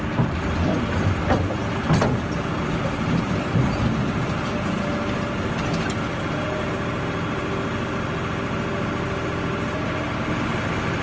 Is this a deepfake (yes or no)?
no